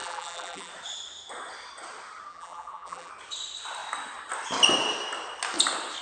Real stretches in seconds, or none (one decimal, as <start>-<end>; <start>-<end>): 0.7-2.3; 3.1-6.0